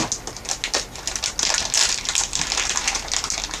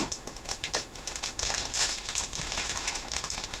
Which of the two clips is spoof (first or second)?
second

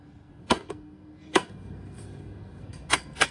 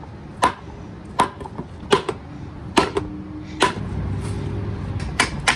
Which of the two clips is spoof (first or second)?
first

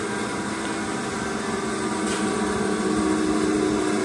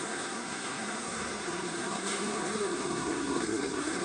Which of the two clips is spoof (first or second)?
second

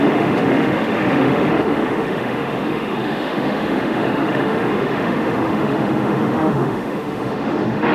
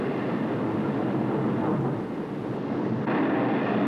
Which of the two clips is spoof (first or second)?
first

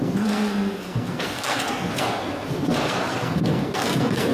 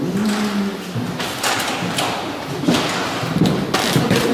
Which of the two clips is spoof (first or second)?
first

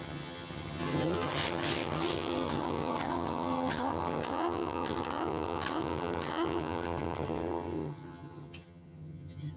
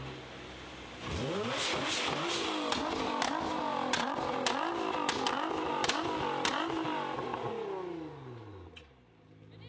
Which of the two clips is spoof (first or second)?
first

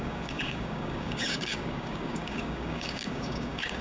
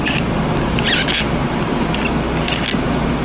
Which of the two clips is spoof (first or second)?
first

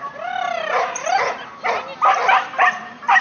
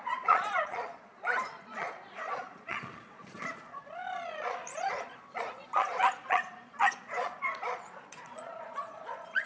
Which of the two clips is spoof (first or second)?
second